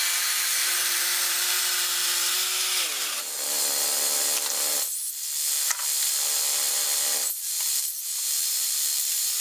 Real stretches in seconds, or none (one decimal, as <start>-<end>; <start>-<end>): 0.0-0.6; 1.6-7.4